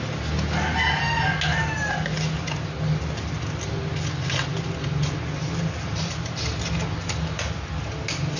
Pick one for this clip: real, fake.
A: real